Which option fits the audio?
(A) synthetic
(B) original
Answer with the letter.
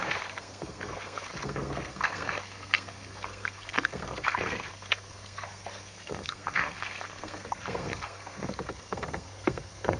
A